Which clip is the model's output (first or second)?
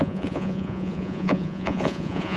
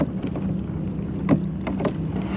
first